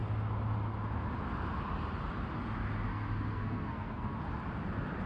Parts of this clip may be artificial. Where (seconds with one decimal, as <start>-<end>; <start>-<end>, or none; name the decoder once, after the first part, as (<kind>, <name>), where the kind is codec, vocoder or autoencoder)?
2.9-4.2 (codec, SNAC)